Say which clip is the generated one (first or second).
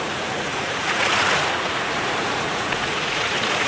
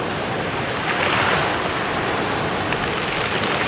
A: first